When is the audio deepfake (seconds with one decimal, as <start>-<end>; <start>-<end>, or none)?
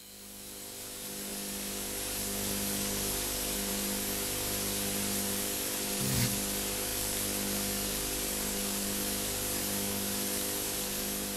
0.0-11.4